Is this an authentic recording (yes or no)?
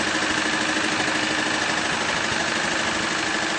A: yes